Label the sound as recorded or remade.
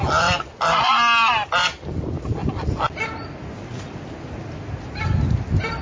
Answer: recorded